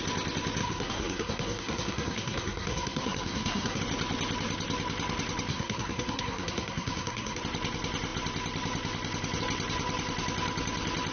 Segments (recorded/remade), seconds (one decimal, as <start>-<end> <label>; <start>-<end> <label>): 0.0-0.6 recorded; 0.6-3.8 remade; 3.8-5.5 recorded; 5.5-7.4 remade; 7.4-11.1 recorded